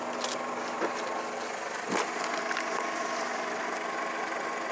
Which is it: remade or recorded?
recorded